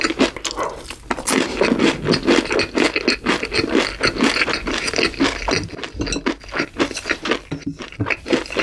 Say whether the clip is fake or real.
real